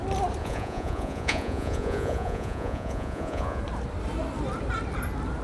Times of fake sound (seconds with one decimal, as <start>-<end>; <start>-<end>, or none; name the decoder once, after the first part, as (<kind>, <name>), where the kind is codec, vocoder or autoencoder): 0.4-3.6 (vocoder, Vocos)

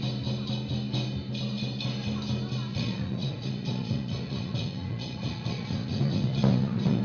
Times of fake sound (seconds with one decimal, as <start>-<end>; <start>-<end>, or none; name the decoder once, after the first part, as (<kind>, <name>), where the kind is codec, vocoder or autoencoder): 2.7-7.0 (vocoder, Vocos)

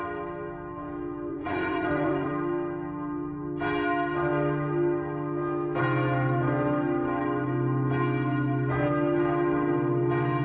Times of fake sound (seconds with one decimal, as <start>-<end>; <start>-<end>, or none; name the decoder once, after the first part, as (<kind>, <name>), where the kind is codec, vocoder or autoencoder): 1.3-2.3 (vocoder, Vocos)